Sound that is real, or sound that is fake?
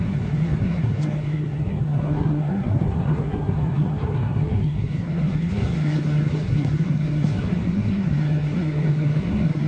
fake